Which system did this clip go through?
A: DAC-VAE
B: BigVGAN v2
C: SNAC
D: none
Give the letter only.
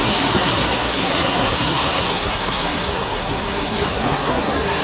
C